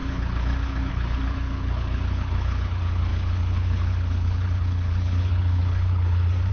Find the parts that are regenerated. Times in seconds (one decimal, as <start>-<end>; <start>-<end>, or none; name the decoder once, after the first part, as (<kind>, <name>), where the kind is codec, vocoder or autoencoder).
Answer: 0.0-6.5 (codec, HILCodec)